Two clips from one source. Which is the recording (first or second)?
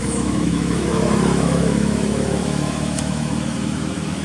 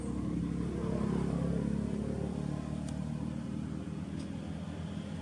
second